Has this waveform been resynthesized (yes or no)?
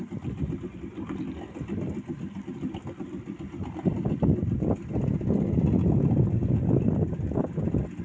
no